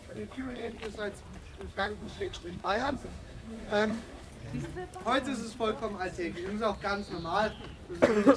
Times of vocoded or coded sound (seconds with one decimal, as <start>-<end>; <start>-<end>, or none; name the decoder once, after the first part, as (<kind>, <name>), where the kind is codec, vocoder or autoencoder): 0.0-0.7 (codec, SNAC); 1.7-4.3